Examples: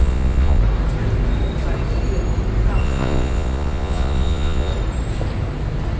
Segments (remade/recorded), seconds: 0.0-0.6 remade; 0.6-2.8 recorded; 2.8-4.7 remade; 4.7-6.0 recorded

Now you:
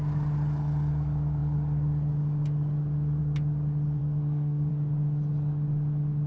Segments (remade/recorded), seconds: 0.0-4.0 recorded; 4.0-4.7 remade; 4.7-6.3 recorded

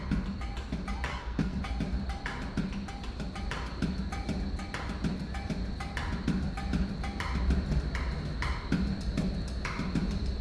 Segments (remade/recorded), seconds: 0.0-1.1 recorded; 1.1-1.6 remade; 1.6-10.4 recorded